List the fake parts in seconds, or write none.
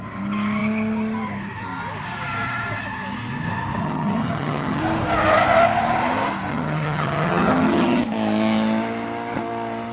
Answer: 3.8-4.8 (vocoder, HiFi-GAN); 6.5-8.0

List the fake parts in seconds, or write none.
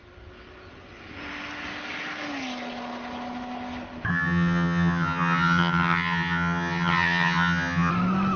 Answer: 4.1-7.9 (vocoder, HiFi-GAN)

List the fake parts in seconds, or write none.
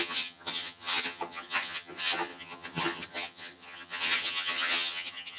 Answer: 0.0-5.4 (vocoder, HiFi-GAN)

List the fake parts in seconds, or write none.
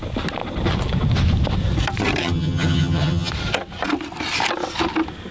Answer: 2.2-3.3 (vocoder, HiFi-GAN)